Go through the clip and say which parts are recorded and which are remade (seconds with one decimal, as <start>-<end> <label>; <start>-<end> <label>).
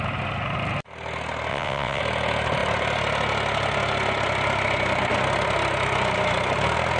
0.0-1.5 recorded; 1.5-2.0 remade; 2.0-7.0 recorded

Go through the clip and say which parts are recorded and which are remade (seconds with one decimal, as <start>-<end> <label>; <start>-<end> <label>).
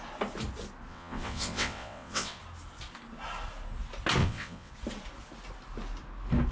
0.0-0.9 recorded; 0.9-2.4 remade; 2.4-4.2 recorded; 4.2-4.7 remade; 4.7-6.5 recorded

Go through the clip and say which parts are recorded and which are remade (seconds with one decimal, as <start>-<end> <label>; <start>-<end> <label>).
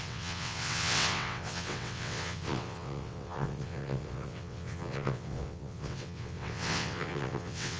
0.0-7.8 remade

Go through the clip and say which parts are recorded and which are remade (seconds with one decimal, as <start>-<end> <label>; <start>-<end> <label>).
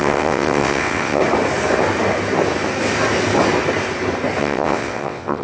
0.0-1.2 remade; 1.2-4.4 recorded; 4.4-5.4 remade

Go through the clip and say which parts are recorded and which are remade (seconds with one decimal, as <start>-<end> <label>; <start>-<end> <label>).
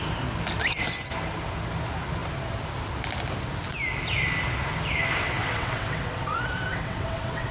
0.0-5.4 recorded; 5.4-7.5 remade